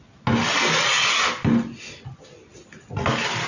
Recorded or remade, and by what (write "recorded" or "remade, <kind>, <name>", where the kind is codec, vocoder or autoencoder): recorded